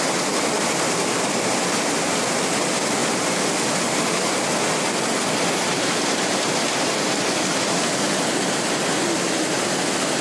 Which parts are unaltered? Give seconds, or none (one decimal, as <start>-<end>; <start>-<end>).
0.0-10.2